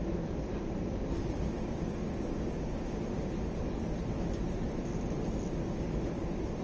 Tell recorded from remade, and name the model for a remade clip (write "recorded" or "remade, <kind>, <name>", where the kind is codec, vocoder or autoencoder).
recorded